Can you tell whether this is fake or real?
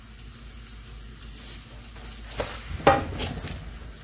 real